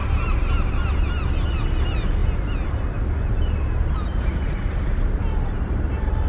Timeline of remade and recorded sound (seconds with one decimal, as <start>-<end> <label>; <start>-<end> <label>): 0.0-6.3 recorded